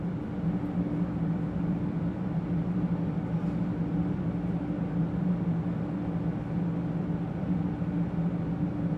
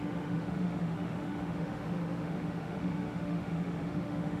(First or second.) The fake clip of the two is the second